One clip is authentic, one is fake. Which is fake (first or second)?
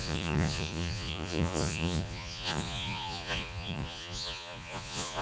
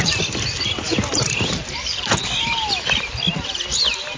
first